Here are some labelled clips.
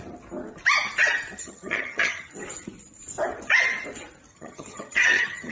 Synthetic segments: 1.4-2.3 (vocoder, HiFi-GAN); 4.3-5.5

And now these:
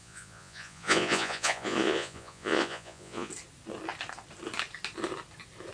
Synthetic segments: 0.0-3.3 (vocoder, Vocos)

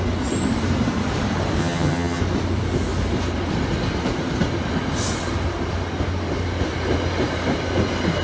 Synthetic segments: 1.6-2.2 (vocoder, HiFi-GAN)

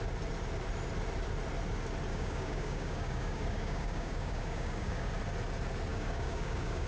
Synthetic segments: 2.1-5.1 (codec, DAC); 5.9-6.9

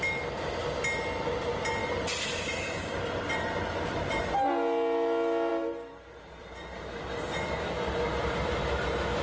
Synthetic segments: 1.8-4.2 (vocoder, BigVGAN v2); 5.5-8.7

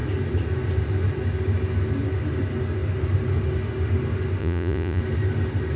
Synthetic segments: 4.4-5.0 (vocoder, Vocos)

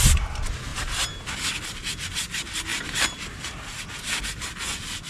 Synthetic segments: none